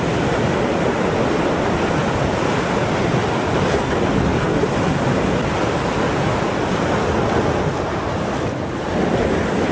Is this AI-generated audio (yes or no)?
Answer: no